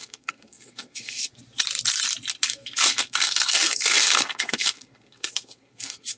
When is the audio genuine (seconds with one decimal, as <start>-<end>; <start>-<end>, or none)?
1.3-2.5